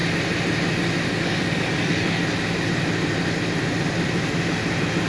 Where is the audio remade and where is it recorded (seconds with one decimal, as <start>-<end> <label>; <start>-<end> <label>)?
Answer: 0.0-1.1 recorded; 1.1-2.2 remade; 2.2-5.1 recorded